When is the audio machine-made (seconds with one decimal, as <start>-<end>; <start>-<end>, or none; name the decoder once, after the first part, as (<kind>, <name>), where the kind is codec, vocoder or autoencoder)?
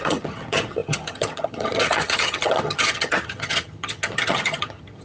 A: 0.0-5.0 (vocoder, HiFi-GAN)